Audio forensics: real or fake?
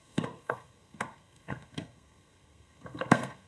fake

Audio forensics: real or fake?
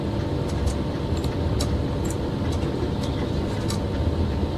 real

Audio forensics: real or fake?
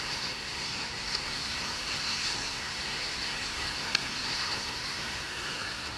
fake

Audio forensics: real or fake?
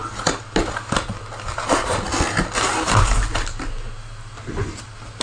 real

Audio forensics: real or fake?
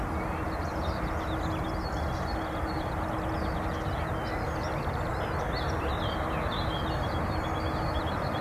real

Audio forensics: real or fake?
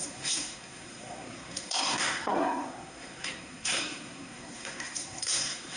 fake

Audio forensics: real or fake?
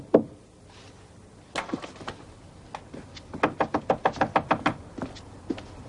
real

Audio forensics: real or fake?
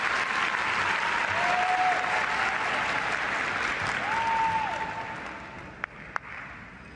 real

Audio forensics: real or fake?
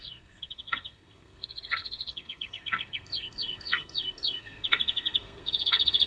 fake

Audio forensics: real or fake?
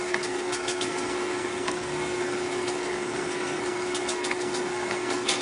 fake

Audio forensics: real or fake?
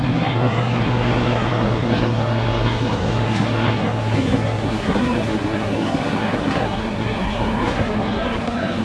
fake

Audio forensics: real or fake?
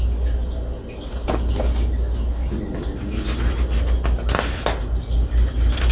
real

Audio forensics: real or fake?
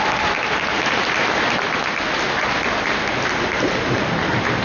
real